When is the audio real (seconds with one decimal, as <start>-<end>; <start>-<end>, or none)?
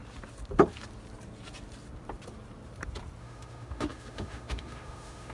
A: 0.0-3.2